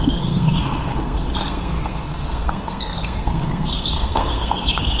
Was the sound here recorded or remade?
remade